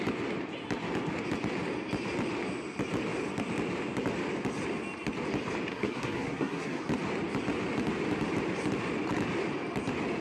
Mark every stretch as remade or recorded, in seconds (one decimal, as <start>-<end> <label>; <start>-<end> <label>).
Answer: 0.0-5.7 recorded; 5.7-6.8 remade; 6.8-10.2 recorded